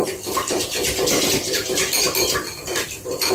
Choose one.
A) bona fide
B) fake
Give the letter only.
A